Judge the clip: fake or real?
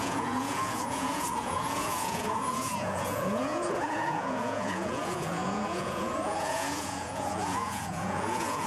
fake